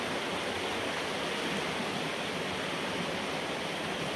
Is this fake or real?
real